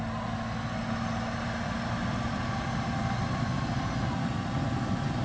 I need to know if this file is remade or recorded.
recorded